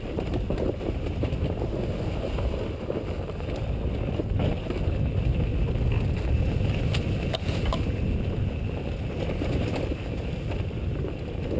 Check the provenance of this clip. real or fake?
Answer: real